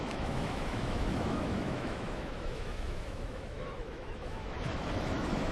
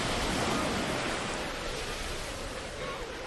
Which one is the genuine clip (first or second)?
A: second